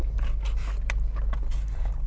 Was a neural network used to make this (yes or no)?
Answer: no